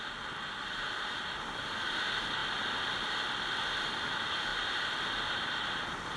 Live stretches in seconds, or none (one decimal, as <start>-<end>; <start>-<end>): 0.0-6.2